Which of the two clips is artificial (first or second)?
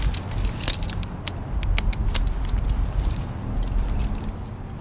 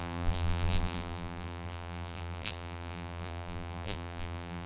second